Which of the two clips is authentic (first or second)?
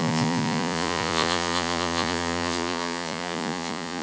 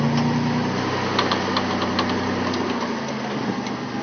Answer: second